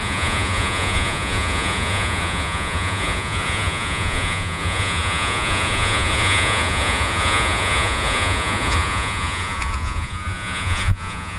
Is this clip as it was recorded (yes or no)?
no